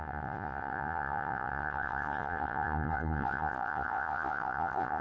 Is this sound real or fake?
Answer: fake